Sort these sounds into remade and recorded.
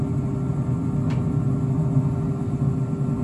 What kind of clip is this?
recorded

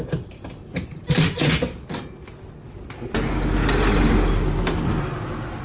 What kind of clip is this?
recorded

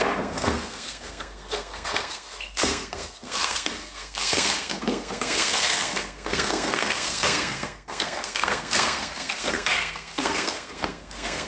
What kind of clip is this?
remade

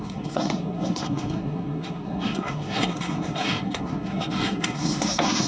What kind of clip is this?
remade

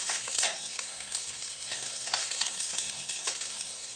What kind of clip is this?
remade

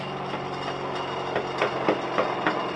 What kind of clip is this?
recorded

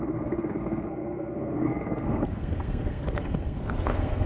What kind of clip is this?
remade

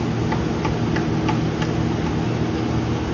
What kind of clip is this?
recorded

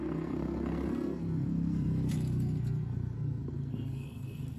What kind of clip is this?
remade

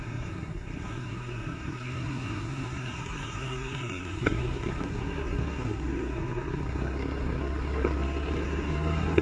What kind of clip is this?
remade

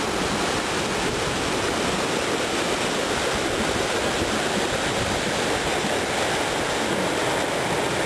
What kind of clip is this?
recorded